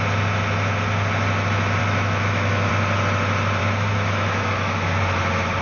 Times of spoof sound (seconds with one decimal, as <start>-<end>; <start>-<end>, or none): 1.8-2.7; 3.6-5.0